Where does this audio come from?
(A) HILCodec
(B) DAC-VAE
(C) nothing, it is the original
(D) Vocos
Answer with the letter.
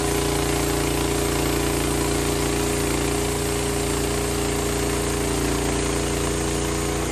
C